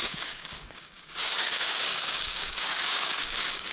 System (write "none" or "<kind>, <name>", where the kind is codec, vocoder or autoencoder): codec, DAC